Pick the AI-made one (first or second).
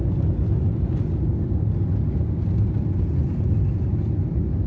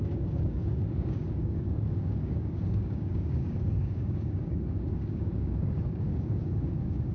second